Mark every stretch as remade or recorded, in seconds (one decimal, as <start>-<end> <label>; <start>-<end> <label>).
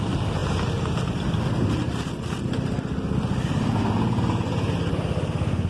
0.0-5.7 recorded